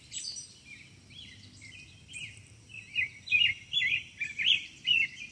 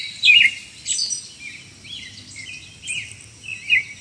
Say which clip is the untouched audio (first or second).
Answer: second